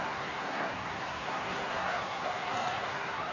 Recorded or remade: remade